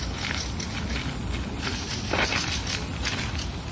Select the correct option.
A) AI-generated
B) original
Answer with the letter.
B